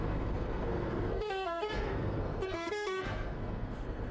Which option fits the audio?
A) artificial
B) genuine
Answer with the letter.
A